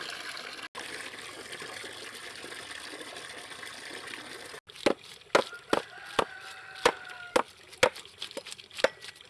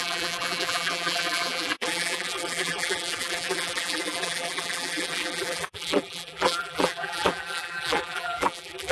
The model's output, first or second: second